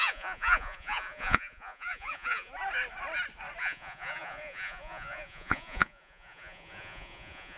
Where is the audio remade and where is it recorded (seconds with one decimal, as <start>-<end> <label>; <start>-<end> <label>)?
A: 0.0-2.5 remade; 2.5-3.6 recorded; 3.6-7.6 remade